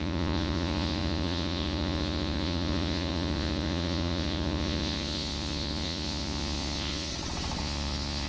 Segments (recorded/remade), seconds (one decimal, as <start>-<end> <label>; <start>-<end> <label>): 0.0-7.1 remade; 7.1-7.6 recorded; 7.6-8.3 remade